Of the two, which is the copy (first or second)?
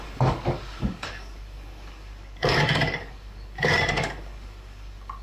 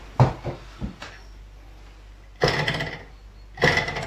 first